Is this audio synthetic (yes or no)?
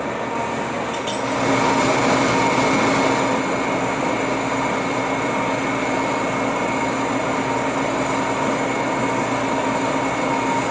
no